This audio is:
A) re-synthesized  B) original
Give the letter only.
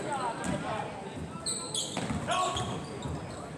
B